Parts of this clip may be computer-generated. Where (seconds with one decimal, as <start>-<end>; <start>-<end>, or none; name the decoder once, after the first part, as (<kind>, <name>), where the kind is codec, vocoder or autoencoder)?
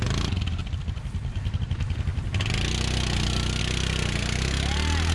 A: none